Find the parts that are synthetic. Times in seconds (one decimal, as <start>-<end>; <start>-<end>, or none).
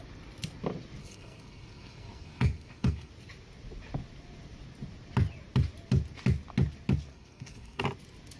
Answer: 1.0-3.1; 7.1-7.8